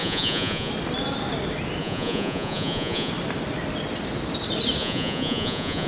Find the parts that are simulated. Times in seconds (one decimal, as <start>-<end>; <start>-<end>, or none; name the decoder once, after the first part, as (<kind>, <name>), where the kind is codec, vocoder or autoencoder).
0.0-0.7 (vocoder, Vocos); 1.8-3.1; 4.8-5.9